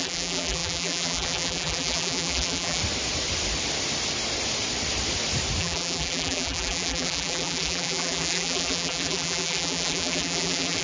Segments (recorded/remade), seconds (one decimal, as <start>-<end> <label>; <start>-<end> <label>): 0.0-2.8 remade; 2.8-5.6 recorded; 5.6-10.8 remade